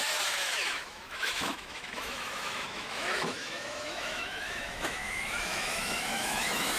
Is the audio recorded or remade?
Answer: remade